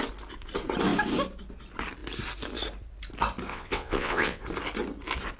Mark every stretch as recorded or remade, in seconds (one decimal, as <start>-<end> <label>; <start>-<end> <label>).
0.0-3.5 recorded; 3.5-4.4 remade; 4.4-5.4 recorded